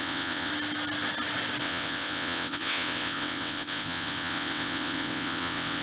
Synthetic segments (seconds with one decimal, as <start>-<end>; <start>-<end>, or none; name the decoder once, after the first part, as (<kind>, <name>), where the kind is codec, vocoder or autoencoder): 0.0-0.5 (vocoder, WaveNeXt); 1.6-5.8